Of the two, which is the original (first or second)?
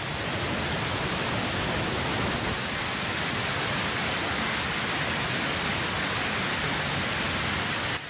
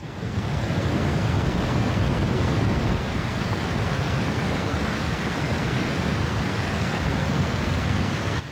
first